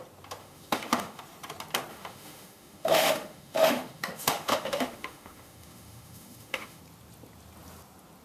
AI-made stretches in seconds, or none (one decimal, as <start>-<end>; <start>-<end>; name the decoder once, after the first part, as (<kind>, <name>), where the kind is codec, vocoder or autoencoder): 0.4-1.2 (autoencoder, DAC-VAE); 1.9-6.8